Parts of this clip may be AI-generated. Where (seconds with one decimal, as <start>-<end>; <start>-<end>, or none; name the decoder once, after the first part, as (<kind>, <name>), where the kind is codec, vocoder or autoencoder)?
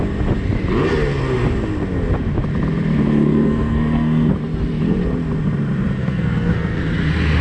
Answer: 3.3-4.3 (codec, SNAC); 6.0-6.8